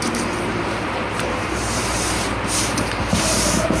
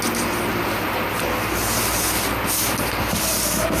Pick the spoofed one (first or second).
first